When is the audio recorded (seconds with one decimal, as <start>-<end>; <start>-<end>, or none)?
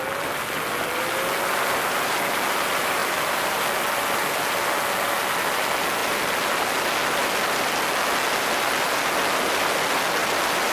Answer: 0.0-6.0; 6.8-10.7